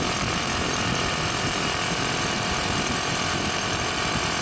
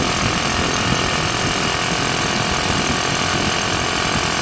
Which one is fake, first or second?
first